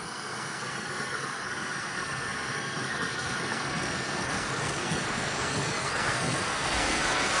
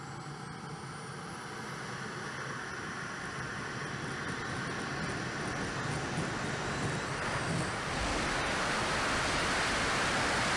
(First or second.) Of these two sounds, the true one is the second